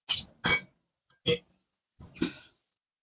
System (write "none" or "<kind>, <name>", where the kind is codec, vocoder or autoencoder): none